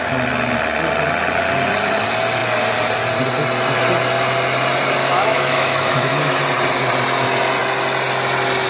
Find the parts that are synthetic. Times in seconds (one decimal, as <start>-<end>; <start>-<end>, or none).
5.0-6.4